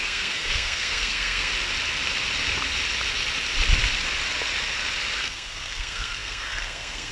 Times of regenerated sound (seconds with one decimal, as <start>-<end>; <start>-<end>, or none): 0.0-1.5; 5.2-7.1